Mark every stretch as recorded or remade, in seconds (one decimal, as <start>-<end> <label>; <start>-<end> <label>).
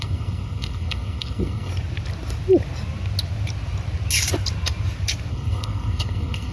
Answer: 0.0-1.7 remade; 1.7-5.3 recorded; 5.3-6.5 remade